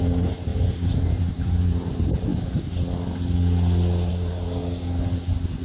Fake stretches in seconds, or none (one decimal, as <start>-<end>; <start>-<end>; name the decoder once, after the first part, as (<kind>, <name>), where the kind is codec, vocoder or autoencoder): 0.0-2.3 (vocoder, BigVGAN v2); 4.1-4.6